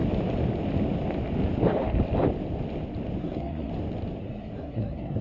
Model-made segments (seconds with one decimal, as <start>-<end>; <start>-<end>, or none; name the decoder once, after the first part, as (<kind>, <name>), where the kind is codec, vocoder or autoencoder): 3.2-3.7 (codec, SNAC); 4.2-5.2

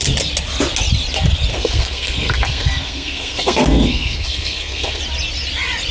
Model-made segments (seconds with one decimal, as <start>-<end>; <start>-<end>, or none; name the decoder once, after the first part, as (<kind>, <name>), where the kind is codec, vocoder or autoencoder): 1.5-5.0 (codec, SNAC)

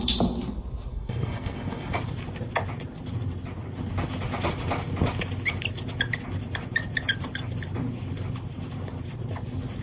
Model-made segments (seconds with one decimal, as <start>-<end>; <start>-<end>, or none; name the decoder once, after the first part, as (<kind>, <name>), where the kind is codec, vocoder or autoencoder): 0.9-2.0 (codec, SNAC)

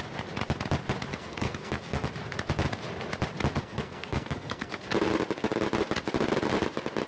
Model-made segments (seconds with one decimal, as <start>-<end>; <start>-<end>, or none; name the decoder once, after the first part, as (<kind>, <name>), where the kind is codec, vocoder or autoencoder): 1.1-2.1 (codec, SNAC); 3.6-4.8

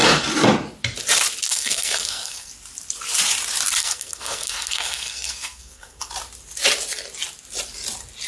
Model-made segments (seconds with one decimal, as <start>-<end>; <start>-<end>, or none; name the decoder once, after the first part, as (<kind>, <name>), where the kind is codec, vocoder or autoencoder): 1.5-2.5 (codec, SNAC); 3.8-6.1

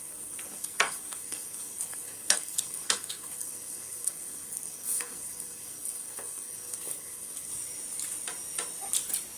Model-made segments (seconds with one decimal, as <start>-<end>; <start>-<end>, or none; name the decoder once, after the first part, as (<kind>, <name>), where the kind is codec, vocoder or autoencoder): 0.0-7.5 (codec, SNAC)

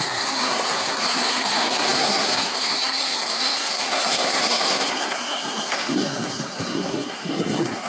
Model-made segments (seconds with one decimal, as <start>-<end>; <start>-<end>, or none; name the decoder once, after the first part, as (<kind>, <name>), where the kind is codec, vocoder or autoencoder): 0.0-7.9 (codec, SNAC)

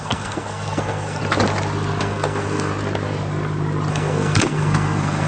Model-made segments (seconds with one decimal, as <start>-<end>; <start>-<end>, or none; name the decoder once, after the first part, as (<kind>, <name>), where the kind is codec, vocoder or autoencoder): 0.0-1.2 (codec, SNAC); 2.0-2.7; 3.9-5.3